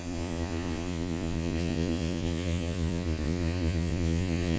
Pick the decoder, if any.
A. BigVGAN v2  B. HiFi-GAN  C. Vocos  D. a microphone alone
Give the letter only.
C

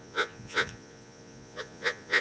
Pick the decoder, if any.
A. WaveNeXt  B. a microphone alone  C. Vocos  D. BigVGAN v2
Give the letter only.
C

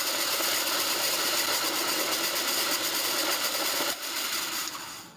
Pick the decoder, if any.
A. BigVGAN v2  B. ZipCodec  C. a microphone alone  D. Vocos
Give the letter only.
C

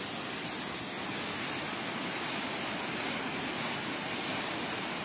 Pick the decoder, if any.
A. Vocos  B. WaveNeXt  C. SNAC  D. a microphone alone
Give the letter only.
D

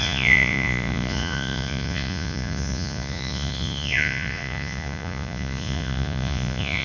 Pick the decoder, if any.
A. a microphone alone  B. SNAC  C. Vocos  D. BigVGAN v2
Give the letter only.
C